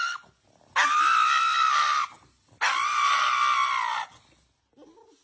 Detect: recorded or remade recorded